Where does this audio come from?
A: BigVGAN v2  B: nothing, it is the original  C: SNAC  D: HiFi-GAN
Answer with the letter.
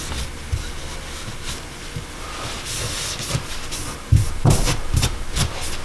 B